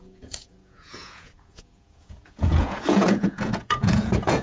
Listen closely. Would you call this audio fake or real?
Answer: fake